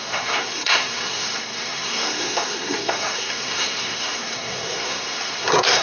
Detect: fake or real fake